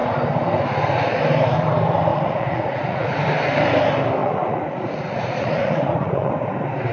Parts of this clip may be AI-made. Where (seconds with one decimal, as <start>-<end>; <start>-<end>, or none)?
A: 2.1-3.1; 4.2-6.3